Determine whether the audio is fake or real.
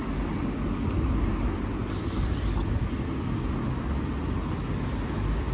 real